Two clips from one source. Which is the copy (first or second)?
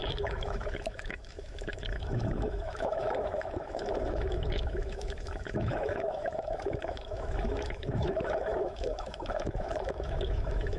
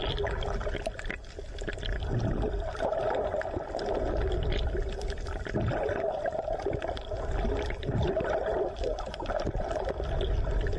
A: first